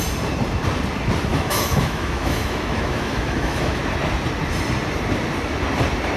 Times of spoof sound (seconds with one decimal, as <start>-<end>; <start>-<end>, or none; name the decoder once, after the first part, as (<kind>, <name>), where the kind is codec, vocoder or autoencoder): 1.3-3.8 (autoencoder, DAC-VAE)